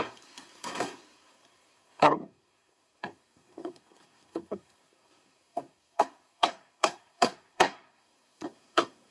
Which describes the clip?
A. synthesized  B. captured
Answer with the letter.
A